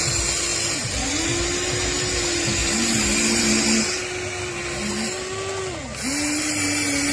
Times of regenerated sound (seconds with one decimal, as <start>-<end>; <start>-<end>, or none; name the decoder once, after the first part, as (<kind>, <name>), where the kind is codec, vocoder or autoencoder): none